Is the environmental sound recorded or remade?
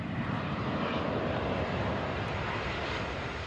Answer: remade